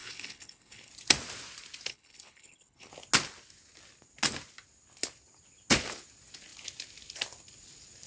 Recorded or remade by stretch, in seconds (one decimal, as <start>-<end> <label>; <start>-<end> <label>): 0.0-0.9 remade; 0.9-1.9 recorded; 1.9-2.9 remade; 2.9-8.1 recorded